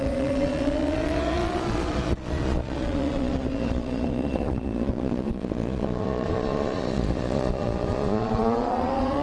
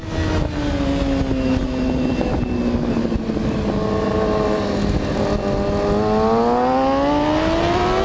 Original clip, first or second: second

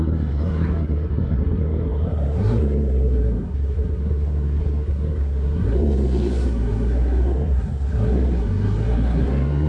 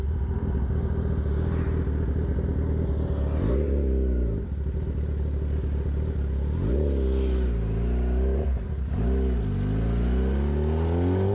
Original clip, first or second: second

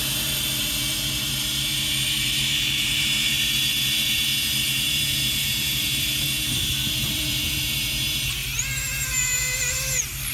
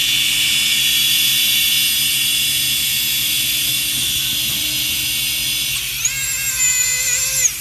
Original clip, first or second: second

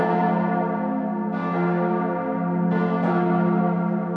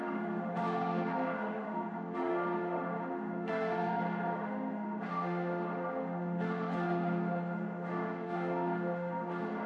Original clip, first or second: first